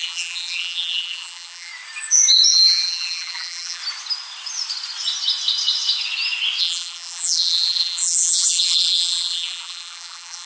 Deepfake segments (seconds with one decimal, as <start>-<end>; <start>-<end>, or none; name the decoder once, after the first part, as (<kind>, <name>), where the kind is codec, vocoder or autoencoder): 0.0-1.7 (vocoder, BigVGAN v2); 2.5-3.8; 6.6-10.5